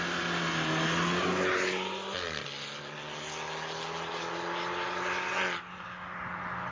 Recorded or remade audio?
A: recorded